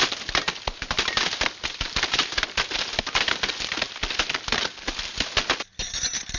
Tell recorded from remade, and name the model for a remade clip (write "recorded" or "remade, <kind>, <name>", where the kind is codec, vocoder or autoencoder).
recorded